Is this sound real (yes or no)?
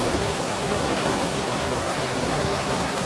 no